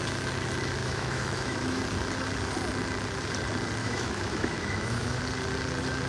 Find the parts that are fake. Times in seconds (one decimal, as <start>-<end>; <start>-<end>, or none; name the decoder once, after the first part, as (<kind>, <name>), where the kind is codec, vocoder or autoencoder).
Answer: 0.8-1.8 (autoencoder, DAC-VAE); 3.8-5.2